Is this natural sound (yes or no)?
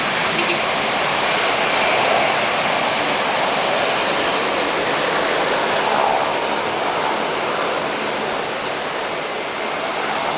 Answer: yes